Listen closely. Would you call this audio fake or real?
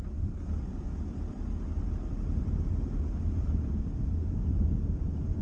real